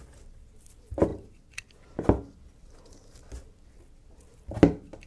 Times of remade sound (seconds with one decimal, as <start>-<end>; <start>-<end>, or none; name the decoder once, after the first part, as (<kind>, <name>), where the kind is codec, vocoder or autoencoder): none